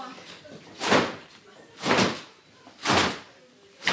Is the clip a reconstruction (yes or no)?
no